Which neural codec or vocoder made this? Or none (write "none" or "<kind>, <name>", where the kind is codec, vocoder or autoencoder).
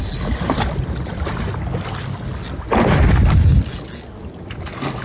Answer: none